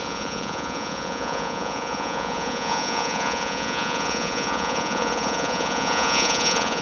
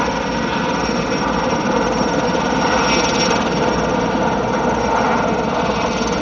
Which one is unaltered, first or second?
second